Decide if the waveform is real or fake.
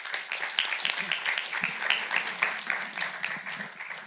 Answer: real